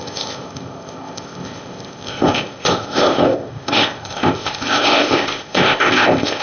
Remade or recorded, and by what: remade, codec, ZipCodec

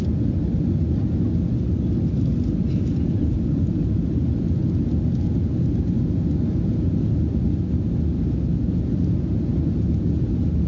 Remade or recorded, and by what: recorded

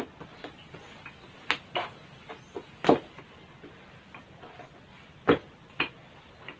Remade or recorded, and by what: recorded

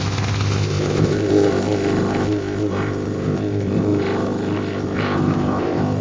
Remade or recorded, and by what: remade, codec, ZipCodec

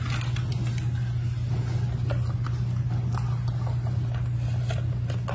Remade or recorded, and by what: recorded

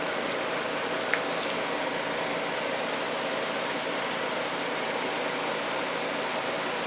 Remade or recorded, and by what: recorded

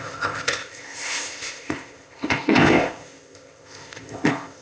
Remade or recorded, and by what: remade, codec, ZipCodec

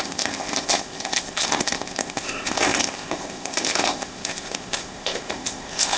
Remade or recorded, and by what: remade, codec, ZipCodec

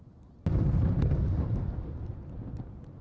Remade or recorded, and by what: recorded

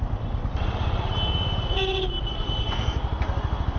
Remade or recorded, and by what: recorded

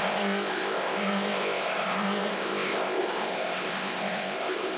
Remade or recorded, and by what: remade, codec, ZipCodec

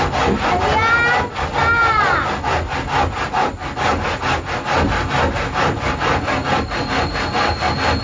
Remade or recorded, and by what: recorded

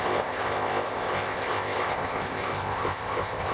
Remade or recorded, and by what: remade, codec, ZipCodec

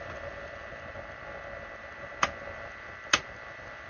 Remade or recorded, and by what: recorded